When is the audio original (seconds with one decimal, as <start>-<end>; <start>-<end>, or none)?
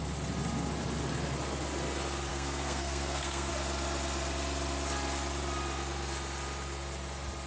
0.0-2.3; 3.5-7.5